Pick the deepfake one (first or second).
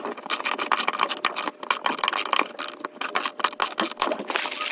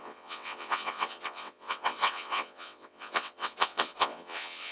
second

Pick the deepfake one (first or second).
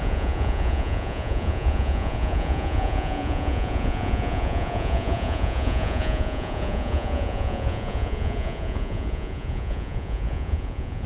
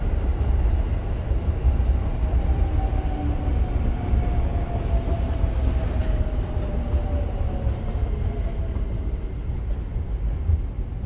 first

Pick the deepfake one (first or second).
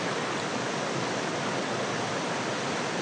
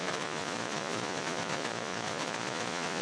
second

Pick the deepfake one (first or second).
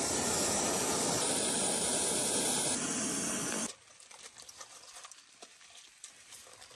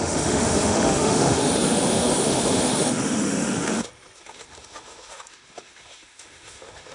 second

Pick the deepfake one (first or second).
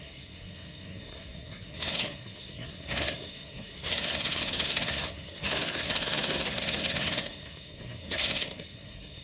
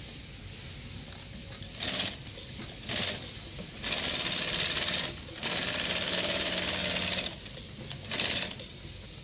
first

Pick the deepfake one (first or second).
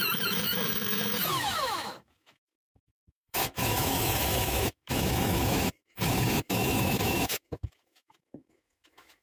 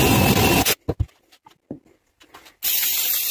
first